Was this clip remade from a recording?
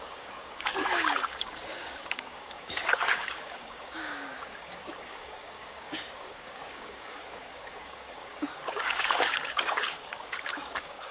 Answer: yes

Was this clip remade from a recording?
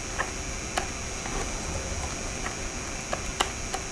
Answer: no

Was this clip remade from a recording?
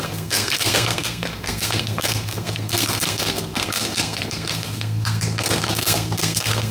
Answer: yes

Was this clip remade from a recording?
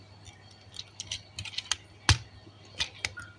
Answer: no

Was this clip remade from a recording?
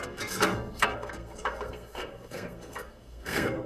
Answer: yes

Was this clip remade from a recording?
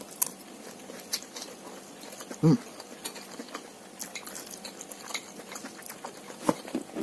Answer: no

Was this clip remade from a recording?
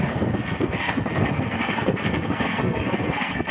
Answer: yes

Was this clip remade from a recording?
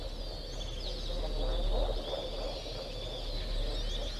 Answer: no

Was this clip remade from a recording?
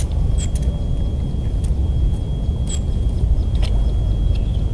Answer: no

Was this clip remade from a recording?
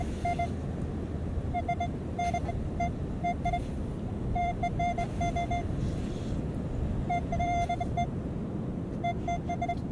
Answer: no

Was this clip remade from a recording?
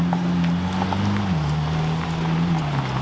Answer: no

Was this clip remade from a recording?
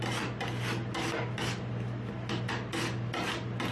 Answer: no